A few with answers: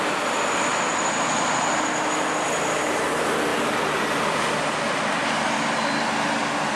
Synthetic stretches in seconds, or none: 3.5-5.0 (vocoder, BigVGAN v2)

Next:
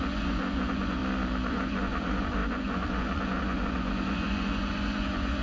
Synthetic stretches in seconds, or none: 0.0-1.0 (vocoder, Vocos); 1.5-5.4

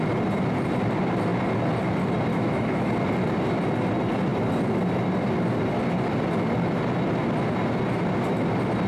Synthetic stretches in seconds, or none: 2.3-2.9 (autoencoder, DAC-VAE)

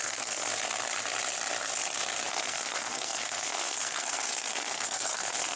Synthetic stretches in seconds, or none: 0.0-0.5 (codec, SNAC); 2.3-5.6

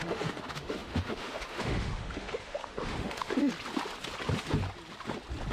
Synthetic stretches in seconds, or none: 0.0-3.5 (autoencoder, DAC-VAE)